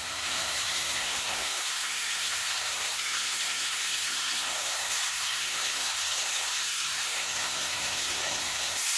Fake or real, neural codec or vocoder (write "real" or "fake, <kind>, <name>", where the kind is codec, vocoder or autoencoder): fake, codec, SNAC